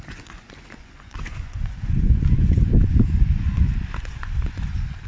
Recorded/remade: remade